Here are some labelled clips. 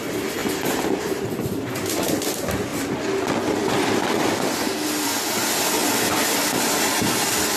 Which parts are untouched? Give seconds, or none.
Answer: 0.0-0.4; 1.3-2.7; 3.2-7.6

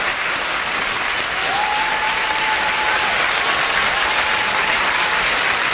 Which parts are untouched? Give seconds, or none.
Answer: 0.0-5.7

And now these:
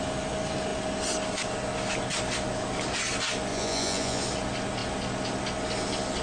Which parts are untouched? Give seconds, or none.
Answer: 0.0-3.5; 4.2-6.2